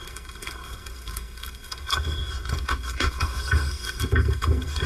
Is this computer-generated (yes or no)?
yes